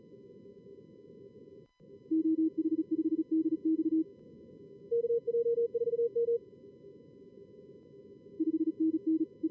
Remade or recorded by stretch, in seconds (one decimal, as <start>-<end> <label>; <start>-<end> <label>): 0.0-9.5 recorded